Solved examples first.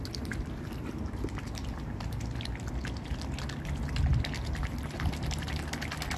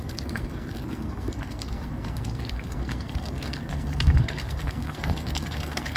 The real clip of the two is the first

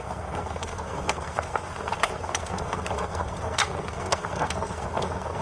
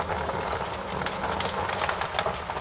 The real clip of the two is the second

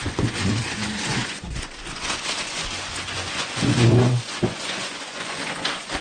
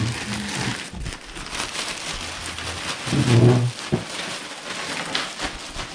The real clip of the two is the second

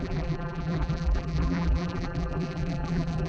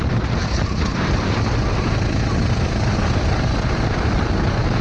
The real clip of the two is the second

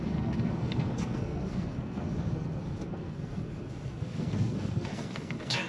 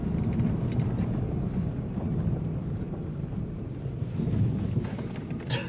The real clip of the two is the second